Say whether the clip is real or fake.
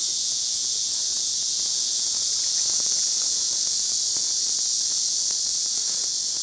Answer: fake